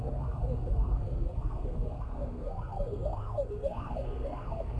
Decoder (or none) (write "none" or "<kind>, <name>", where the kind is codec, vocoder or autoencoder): codec, SNAC